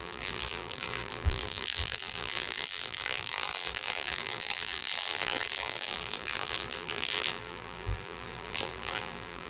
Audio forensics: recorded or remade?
remade